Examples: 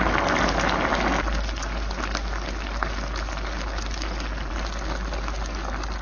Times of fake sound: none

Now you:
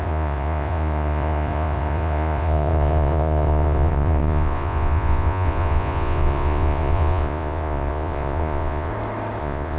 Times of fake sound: 0.0-8.9 (vocoder, Vocos); 9.4-9.8

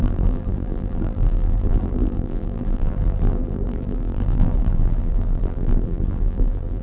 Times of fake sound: 0.0-6.8 (vocoder, BigVGAN v2)

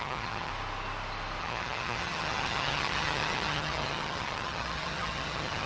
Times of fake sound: 0.0-0.5 (vocoder, HiFi-GAN); 1.4-5.7

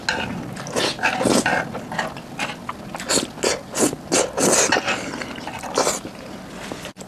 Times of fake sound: none

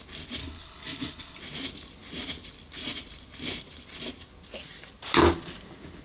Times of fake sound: 0.4-1.4 (codec, HILCodec)

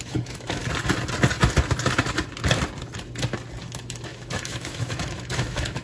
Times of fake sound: 0.0-0.6 (autoencoder, DAC-VAE); 3.6-5.8

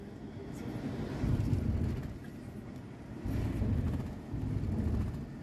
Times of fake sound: 2.3-4.4 (vocoder, BigVGAN v2)